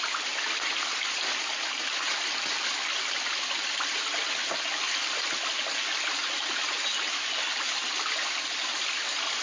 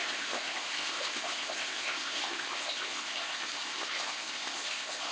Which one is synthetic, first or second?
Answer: second